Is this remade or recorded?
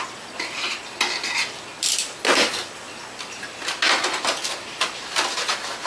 recorded